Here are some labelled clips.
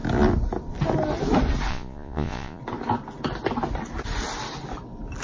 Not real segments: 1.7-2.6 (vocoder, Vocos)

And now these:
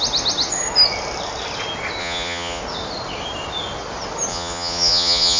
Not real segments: 2.0-2.6 (vocoder, Vocos); 4.3-5.4

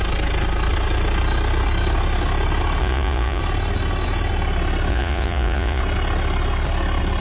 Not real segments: 2.8-3.4 (vocoder, Vocos); 4.9-5.8

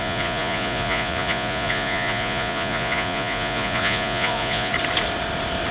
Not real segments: 0.0-4.7 (vocoder, Vocos)

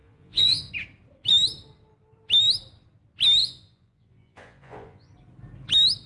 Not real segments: 0.0-0.7 (vocoder, Vocos); 3.4-5.1

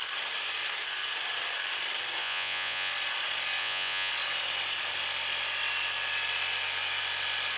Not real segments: 2.2-2.9 (vocoder, Vocos); 3.6-4.1

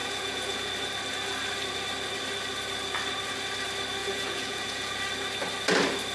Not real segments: 0.0-0.7 (vocoder, Vocos); 4.0-5.0